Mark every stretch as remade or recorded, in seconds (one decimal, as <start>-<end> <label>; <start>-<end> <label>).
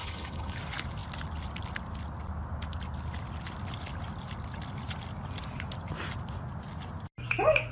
0.0-0.6 remade; 0.6-7.7 recorded